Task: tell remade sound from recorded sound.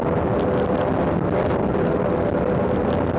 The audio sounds recorded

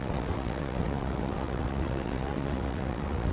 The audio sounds remade